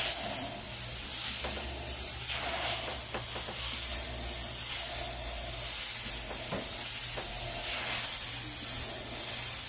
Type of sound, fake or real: real